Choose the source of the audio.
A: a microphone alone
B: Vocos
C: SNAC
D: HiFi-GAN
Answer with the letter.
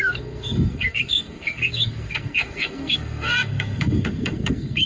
C